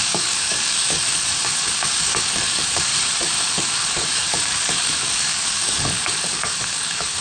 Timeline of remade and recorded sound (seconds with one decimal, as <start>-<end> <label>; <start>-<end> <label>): 0.0-2.9 remade; 2.9-3.4 recorded; 3.4-7.2 remade